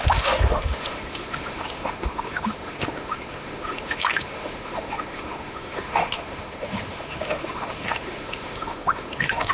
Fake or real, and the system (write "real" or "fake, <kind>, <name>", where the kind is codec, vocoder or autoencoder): fake, autoencoder, DAC-VAE